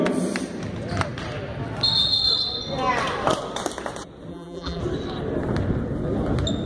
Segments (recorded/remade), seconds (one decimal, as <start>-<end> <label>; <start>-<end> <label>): 0.0-4.3 recorded; 4.3-4.8 remade; 4.8-6.7 recorded